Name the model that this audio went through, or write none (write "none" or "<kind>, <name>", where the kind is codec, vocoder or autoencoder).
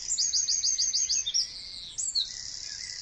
none